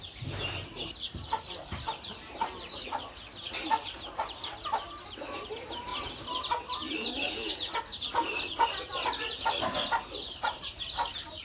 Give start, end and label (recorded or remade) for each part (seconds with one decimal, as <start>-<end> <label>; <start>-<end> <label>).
0.0-5.9 remade; 5.9-6.7 recorded; 6.7-11.4 remade